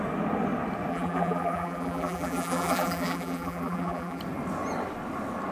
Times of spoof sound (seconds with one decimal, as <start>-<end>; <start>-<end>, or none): 0.9-4.2